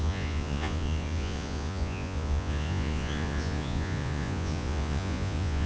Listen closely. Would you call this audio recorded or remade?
remade